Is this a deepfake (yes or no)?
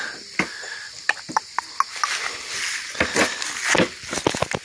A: no